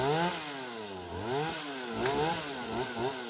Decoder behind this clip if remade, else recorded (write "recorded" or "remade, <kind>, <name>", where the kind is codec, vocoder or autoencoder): recorded